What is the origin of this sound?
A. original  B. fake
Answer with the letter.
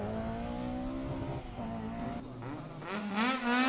A